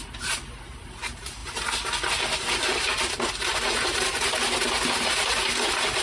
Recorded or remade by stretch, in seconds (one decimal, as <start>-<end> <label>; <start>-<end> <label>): 0.0-6.0 recorded